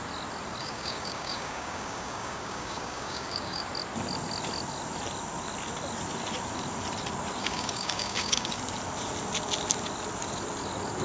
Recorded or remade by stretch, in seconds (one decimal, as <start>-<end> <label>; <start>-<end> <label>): 0.0-0.6 recorded; 0.6-3.7 remade; 3.7-7.4 recorded; 7.4-8.6 remade; 8.6-11.0 recorded